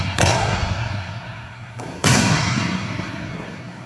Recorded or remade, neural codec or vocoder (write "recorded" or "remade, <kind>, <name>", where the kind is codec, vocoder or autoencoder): remade, codec, SNAC